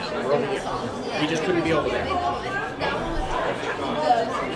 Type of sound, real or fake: real